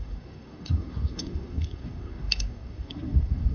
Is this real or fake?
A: fake